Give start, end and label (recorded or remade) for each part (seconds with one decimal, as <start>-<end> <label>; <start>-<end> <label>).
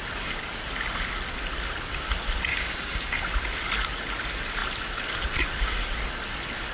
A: 0.0-2.5 recorded; 2.5-3.2 remade; 3.2-6.7 recorded